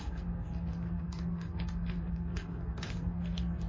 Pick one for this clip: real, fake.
fake